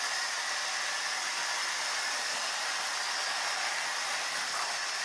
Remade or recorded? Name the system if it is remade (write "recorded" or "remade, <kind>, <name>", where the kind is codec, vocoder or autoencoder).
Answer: recorded